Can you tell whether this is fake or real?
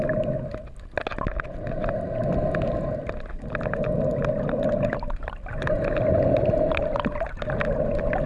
real